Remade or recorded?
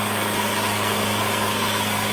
remade